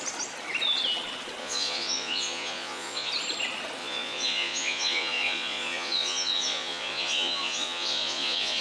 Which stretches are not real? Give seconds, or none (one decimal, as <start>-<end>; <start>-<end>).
1.4-3.1; 3.8-8.6